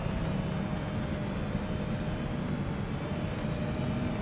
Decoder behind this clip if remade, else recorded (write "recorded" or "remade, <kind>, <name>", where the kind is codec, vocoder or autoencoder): recorded